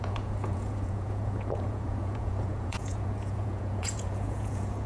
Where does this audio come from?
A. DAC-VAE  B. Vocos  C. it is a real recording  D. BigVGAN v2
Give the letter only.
B